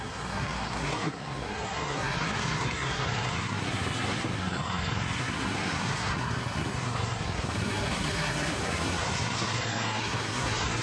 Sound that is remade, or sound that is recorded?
remade